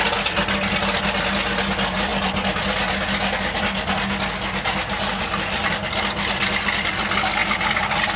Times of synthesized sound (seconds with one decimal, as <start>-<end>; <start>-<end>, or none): none